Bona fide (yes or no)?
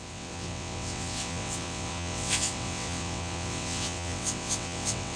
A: no